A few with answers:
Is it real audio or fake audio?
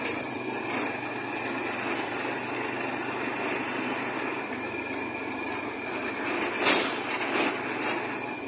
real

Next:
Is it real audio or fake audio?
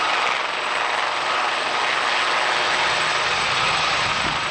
real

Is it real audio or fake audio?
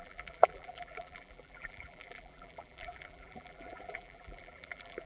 fake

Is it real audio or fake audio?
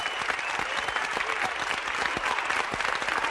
real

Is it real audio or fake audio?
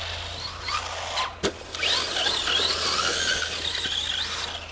real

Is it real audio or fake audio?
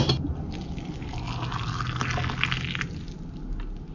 real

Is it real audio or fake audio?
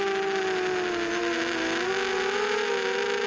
real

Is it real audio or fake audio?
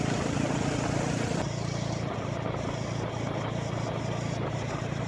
real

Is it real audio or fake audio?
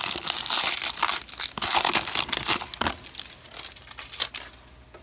real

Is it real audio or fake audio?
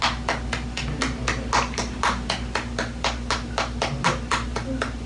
real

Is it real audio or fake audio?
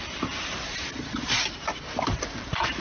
fake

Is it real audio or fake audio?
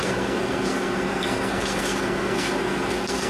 fake